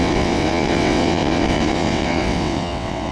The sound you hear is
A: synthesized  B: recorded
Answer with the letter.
A